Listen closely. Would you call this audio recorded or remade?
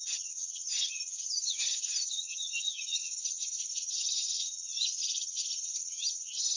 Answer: remade